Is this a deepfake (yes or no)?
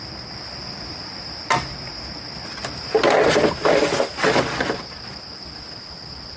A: no